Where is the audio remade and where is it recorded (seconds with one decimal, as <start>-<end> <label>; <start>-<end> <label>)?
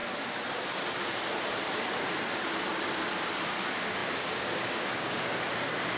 0.0-3.6 recorded; 3.6-6.0 remade